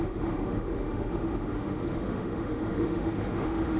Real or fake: fake